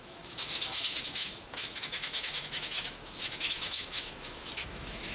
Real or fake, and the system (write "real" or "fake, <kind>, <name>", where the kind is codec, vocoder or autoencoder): fake, autoencoder, DAC-VAE